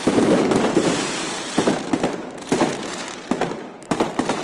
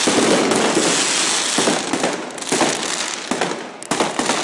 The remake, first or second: first